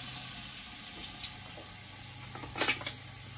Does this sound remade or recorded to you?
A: recorded